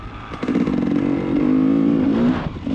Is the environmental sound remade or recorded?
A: recorded